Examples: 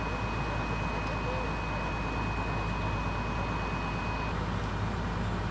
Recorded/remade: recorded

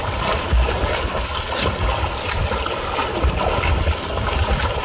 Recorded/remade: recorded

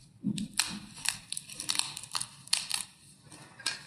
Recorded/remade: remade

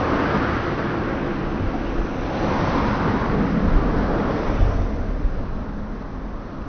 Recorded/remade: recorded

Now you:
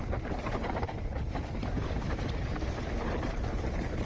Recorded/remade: remade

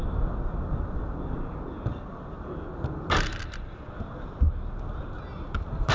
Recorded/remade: recorded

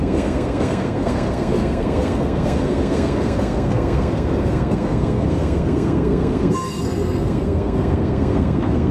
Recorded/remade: remade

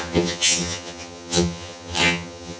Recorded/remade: remade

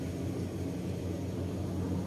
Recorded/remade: recorded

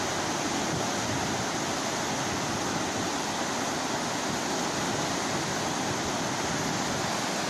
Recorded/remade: recorded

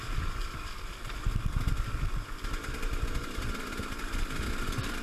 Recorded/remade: recorded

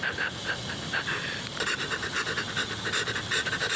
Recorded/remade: recorded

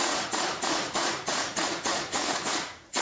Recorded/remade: remade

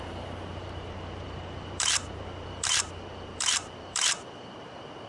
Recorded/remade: remade